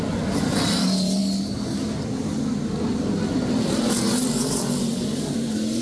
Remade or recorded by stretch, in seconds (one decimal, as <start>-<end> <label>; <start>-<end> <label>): 0.0-5.8 recorded